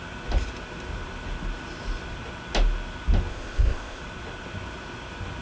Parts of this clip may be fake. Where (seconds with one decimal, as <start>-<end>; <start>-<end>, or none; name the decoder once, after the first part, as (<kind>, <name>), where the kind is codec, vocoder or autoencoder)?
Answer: 3.3-4.0 (codec, ZipCodec)